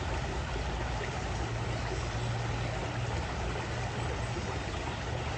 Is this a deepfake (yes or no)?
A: no